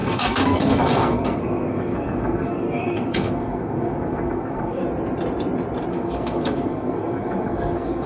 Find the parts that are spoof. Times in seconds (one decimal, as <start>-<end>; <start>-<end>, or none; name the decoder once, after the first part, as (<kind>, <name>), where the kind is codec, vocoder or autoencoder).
0.0-4.8 (codec, SNAC); 5.9-8.1